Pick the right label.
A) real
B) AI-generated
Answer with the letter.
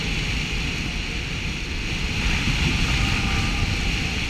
A